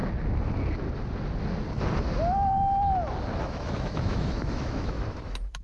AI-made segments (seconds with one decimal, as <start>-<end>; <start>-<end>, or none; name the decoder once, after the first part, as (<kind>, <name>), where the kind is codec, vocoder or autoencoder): 3.4-5.6 (autoencoder, DAC-VAE)